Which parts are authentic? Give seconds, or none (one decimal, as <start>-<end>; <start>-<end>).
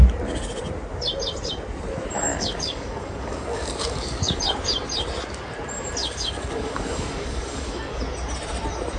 0.0-2.3; 4.4-6.0; 8.0-9.0